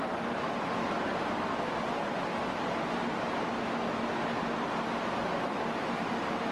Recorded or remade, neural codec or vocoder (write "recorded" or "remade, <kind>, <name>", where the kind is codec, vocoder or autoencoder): recorded